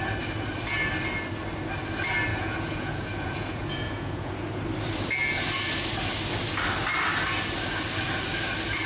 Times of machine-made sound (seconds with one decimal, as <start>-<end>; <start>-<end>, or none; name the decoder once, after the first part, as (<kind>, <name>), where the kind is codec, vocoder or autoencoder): 2.3-4.6 (vocoder, Vocos)